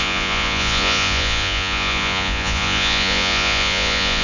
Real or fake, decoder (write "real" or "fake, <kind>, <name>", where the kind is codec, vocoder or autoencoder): fake, vocoder, Vocos